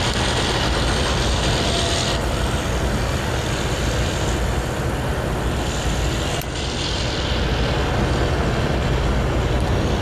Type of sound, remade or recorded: recorded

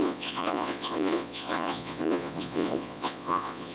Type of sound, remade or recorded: remade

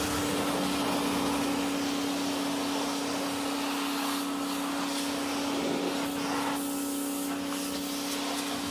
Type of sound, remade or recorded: recorded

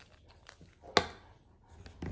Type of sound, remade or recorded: recorded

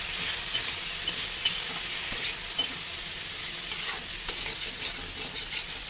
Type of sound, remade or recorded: recorded